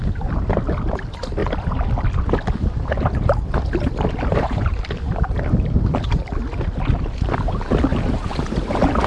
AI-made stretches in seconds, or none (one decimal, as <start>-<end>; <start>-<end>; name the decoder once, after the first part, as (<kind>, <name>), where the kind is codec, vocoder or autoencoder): 4.3-4.8 (vocoder, BigVGAN v2); 7.9-9.1